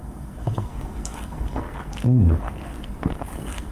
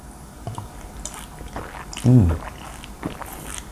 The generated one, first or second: first